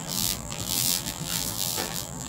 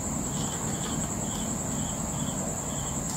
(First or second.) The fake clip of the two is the first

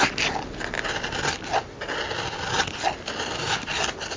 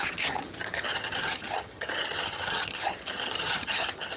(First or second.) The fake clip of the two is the second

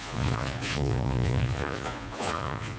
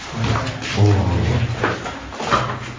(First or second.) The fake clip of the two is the first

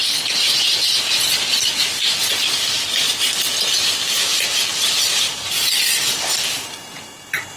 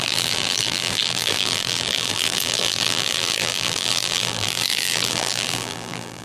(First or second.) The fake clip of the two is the second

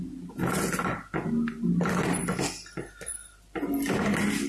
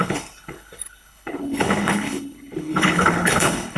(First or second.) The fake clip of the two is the second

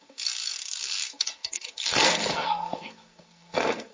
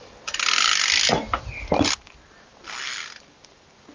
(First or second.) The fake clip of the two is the first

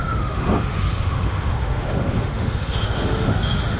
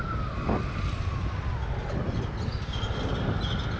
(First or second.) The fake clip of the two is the first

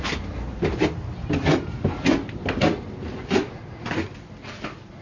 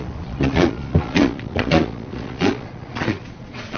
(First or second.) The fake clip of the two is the second